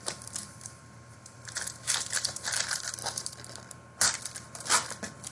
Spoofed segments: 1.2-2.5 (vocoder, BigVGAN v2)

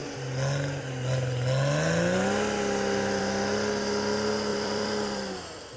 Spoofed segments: 4.5-5.8 (vocoder, BigVGAN v2)

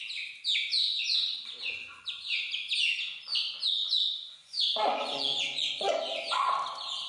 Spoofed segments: 1.2-2.4 (vocoder, Vocos); 3.8-6.0

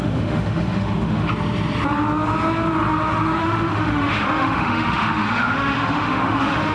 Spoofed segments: 0.0-1.3 (autoencoder, DAC-VAE); 3.4-6.7